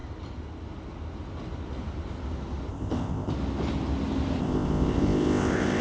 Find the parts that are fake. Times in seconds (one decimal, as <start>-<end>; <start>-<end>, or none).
2.7-3.3; 4.4-5.8